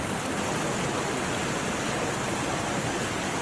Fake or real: real